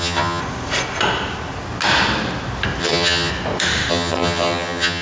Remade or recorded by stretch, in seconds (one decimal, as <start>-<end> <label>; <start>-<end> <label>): 0.0-0.4 remade; 0.4-2.8 recorded; 2.8-3.3 remade; 3.3-3.9 recorded; 3.9-5.0 remade